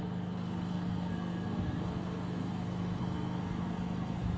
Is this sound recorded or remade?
remade